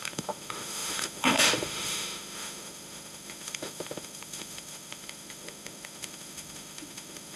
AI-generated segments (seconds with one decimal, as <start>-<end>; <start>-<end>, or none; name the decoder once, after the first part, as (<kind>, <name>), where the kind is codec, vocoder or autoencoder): 0.0-7.4 (autoencoder, DAC-VAE)